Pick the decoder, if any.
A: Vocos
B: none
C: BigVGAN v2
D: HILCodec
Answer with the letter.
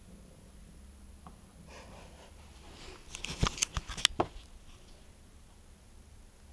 B